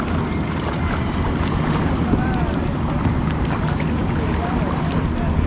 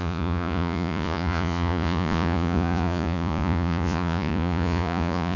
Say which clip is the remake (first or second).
second